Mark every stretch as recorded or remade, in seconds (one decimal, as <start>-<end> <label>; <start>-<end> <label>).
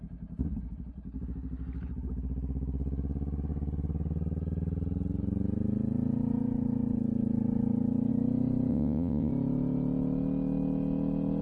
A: 0.0-8.7 recorded; 8.7-9.3 remade; 9.3-11.4 recorded